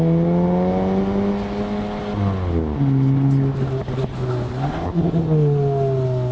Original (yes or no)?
yes